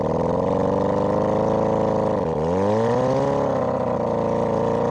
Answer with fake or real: real